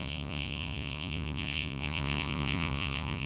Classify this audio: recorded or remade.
remade